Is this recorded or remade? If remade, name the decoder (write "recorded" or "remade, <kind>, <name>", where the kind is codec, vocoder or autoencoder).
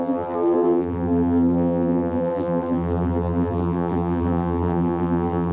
remade, vocoder, BigVGAN v2